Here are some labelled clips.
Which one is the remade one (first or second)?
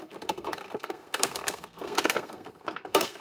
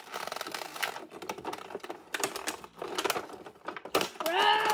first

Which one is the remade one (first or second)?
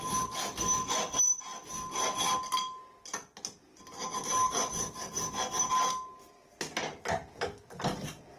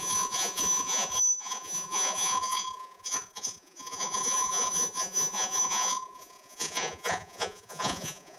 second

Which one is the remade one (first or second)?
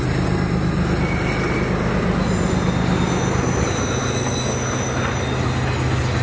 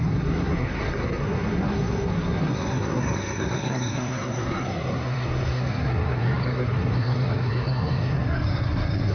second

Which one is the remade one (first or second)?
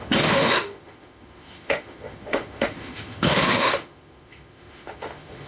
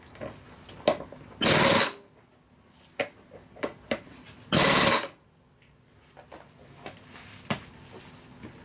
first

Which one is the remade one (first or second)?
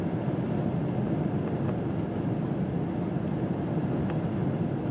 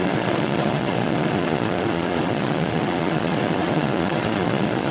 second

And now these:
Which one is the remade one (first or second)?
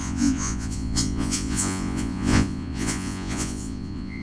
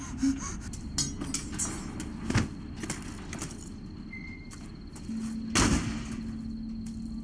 first